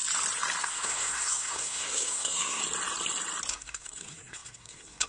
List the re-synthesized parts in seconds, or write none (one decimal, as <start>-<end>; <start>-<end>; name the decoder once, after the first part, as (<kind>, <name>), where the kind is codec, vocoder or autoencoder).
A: 0.6-2.6 (codec, SNAC); 3.5-5.1